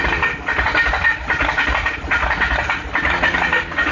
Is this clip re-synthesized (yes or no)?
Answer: no